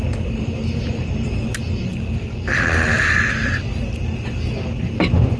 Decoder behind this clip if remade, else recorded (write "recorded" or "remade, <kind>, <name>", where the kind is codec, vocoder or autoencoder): recorded